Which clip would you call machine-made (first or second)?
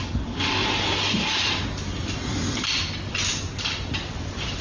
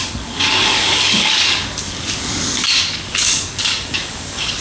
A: second